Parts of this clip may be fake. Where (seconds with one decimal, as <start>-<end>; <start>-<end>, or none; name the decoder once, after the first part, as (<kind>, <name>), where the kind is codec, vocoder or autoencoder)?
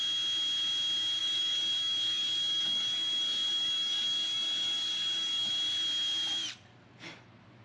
1.2-5.5 (codec, DAC)